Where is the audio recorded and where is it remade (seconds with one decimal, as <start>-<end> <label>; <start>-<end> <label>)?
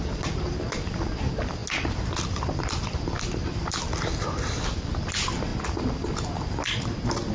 0.0-7.3 recorded